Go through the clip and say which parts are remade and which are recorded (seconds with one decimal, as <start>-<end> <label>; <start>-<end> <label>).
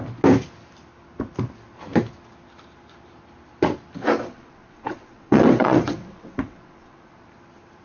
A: 0.0-4.3 recorded; 4.3-7.1 remade; 7.1-7.8 recorded